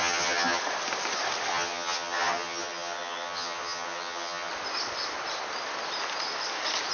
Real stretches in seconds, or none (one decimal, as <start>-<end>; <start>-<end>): 0.6-1.5; 4.5-6.9